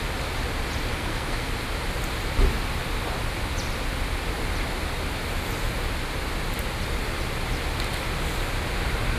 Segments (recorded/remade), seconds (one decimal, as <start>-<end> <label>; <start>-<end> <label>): 0.0-0.9 recorded; 0.9-1.5 remade; 1.5-9.2 recorded